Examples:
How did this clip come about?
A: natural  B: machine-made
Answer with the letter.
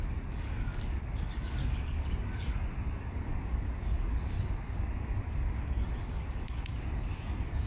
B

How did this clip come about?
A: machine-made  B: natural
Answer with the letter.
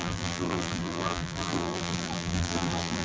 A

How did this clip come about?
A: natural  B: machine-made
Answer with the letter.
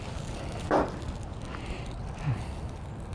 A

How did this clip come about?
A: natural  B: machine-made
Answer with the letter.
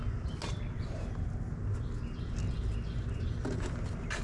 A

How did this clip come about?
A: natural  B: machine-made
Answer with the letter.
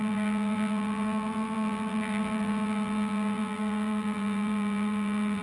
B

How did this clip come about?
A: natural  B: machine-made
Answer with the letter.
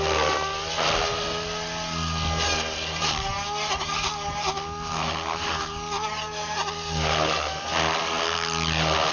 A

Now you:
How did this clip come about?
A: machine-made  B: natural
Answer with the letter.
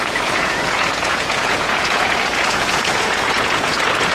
A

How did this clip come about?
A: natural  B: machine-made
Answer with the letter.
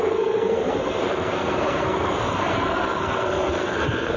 B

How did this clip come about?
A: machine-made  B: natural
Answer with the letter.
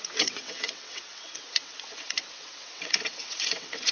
A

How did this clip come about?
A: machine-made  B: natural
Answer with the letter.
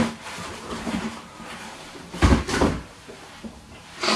A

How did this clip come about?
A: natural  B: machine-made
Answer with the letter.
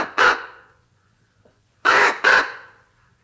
B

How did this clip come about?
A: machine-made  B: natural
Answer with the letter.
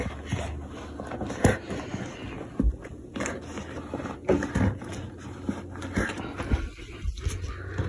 B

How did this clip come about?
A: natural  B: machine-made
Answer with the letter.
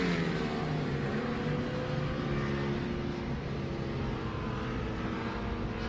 A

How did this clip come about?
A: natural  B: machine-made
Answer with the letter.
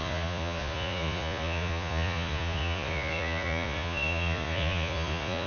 B